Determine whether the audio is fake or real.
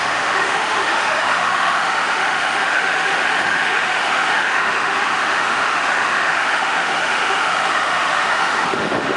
fake